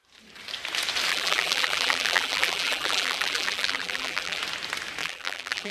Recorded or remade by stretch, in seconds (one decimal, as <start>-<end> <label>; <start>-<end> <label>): 0.0-1.1 recorded; 1.1-4.4 remade; 4.4-5.0 recorded; 5.0-5.7 remade